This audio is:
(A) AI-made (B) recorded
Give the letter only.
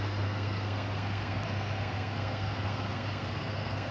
A